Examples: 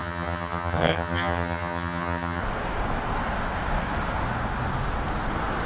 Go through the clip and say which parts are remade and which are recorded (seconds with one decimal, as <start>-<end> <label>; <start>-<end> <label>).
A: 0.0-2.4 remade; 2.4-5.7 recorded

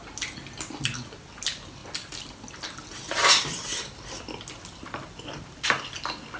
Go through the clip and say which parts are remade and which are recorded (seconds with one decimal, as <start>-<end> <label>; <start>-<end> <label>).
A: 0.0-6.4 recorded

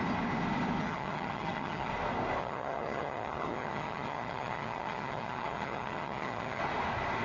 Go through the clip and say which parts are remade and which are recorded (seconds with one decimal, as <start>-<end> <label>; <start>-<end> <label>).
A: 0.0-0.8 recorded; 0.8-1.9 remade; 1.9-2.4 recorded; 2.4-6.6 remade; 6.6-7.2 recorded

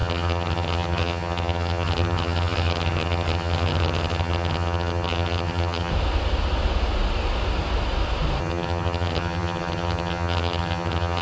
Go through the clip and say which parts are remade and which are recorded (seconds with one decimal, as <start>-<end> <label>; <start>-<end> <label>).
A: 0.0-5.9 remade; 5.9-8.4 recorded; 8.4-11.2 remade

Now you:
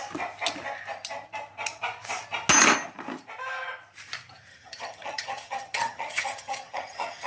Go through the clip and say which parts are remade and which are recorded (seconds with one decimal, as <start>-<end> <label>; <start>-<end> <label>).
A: 0.0-4.5 recorded; 4.5-7.3 remade

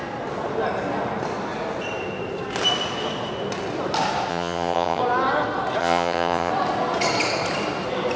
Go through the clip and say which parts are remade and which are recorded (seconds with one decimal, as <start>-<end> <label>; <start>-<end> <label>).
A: 0.0-4.3 recorded; 4.3-5.0 remade; 5.0-5.8 recorded; 5.8-6.5 remade; 6.5-8.2 recorded

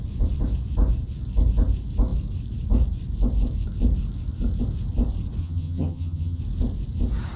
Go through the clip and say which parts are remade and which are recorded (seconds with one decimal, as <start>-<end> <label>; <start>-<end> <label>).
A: 0.0-5.4 recorded; 5.4-6.4 remade; 6.4-7.4 recorded